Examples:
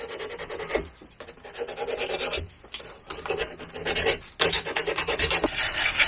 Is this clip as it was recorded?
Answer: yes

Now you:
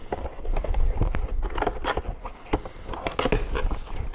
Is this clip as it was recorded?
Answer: yes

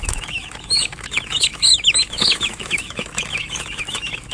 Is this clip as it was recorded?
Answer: no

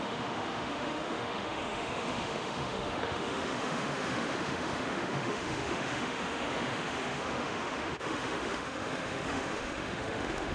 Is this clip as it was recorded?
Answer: no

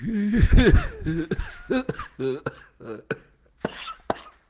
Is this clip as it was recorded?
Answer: yes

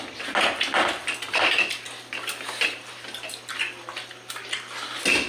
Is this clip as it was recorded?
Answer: yes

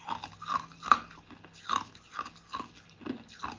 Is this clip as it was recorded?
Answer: yes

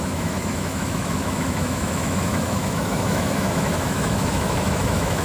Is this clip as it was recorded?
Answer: no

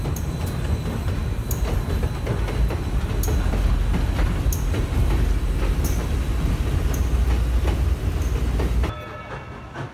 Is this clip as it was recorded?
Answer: yes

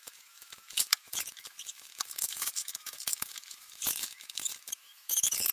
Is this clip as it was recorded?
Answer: no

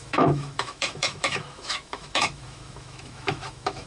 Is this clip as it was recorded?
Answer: no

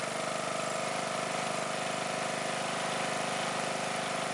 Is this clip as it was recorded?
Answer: yes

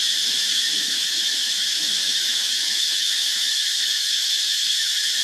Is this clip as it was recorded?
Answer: no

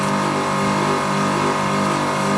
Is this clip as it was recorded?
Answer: yes